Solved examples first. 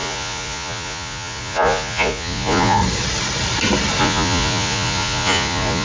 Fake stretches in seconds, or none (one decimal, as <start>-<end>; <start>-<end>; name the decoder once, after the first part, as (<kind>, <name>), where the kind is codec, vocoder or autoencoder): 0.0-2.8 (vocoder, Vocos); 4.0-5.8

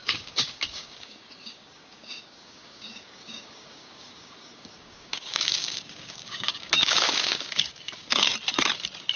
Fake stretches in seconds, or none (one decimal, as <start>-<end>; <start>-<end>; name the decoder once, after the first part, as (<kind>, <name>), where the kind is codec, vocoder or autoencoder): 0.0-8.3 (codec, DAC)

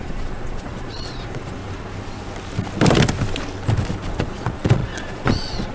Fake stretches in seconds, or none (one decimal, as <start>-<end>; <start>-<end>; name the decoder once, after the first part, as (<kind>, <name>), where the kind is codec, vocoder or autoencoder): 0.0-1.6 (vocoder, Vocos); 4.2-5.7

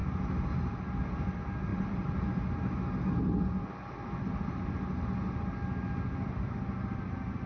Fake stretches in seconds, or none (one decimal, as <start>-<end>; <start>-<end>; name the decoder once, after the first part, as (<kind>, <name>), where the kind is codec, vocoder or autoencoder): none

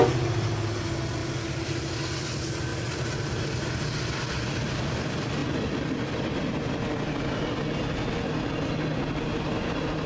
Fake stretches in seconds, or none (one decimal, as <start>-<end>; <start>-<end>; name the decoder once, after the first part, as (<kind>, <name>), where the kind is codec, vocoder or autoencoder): none

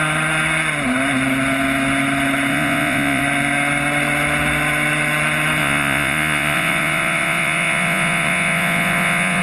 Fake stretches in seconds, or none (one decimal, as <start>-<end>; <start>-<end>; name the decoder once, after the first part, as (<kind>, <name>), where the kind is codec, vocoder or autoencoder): 2.5-3.2 (vocoder, Vocos); 5.6-9.4

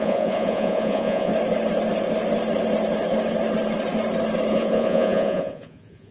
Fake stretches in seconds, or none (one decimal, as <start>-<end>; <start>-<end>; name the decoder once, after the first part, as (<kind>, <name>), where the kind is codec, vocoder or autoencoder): 0.0-1.3 (vocoder, Vocos); 4.5-6.1